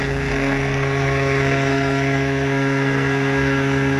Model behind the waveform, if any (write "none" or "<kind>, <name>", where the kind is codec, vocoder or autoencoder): codec, SNAC